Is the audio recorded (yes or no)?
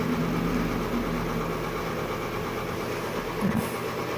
no